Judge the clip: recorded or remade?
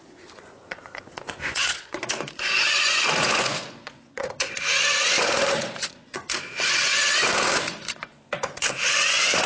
remade